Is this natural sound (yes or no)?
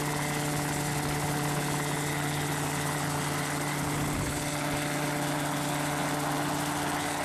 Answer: yes